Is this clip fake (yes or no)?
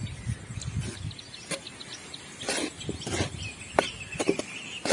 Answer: no